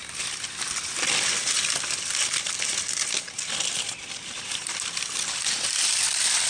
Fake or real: real